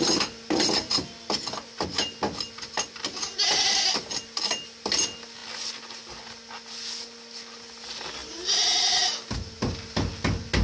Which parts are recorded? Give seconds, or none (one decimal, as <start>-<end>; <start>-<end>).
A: 0.0-10.6